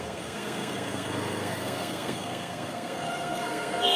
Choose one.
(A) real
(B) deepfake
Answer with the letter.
B